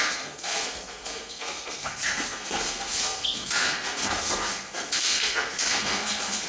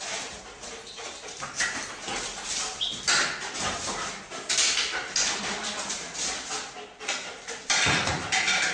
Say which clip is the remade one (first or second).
first